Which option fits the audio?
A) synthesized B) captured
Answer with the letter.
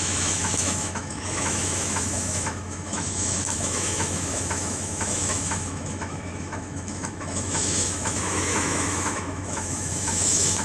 A